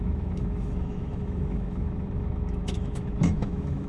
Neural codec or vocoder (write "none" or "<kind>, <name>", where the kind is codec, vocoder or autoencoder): autoencoder, DAC-VAE